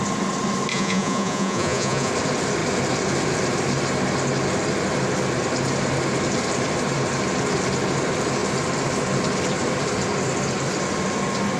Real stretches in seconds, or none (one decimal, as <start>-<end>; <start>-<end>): 0.0-0.7; 2.1-11.6